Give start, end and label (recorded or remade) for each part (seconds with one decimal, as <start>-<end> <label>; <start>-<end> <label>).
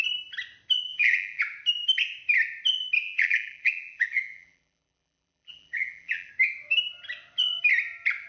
0.0-0.9 recorded; 0.9-1.4 remade; 1.4-3.0 recorded; 3.0-6.3 remade; 6.3-8.3 recorded